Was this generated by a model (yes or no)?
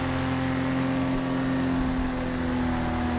no